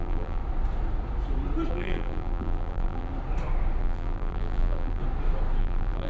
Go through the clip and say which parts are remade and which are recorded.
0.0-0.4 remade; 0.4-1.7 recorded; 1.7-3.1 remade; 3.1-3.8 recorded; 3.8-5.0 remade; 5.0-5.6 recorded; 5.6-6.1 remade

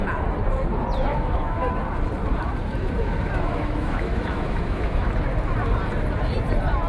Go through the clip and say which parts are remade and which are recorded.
0.0-1.1 recorded; 1.1-1.7 remade; 1.7-2.7 recorded; 2.7-5.1 remade; 5.1-6.9 recorded

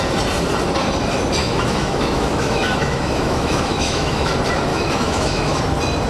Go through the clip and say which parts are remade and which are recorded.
0.0-1.4 recorded; 1.4-4.3 remade; 4.3-4.7 recorded; 4.7-5.6 remade; 5.6-6.1 recorded

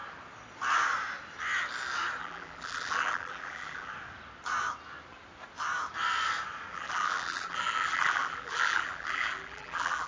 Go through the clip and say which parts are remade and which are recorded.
0.0-2.2 recorded; 2.2-3.9 remade; 3.9-6.7 recorded; 6.7-10.1 remade

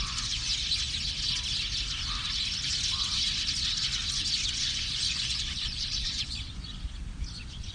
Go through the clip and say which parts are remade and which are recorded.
0.0-0.5 remade; 0.5-4.5 recorded; 4.5-6.7 remade; 6.7-7.3 recorded; 7.3-7.7 remade

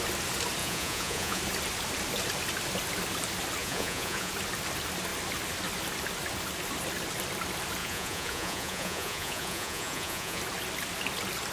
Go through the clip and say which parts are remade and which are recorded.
0.0-0.6 recorded; 0.6-1.4 remade; 1.4-3.6 recorded; 3.6-4.3 remade; 4.3-7.8 recorded; 7.8-10.4 remade; 10.4-11.5 recorded

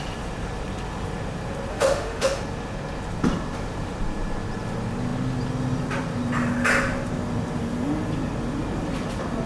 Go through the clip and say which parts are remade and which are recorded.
0.0-1.7 recorded; 1.7-2.4 remade; 2.4-9.5 recorded